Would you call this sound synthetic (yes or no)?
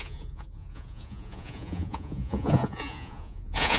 yes